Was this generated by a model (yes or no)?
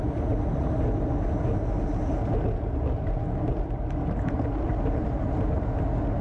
no